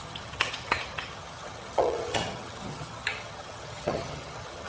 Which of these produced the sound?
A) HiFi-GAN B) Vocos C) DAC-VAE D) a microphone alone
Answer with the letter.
A